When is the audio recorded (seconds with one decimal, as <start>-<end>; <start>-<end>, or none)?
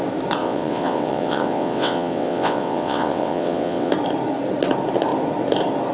0.0-0.4; 3.9-5.9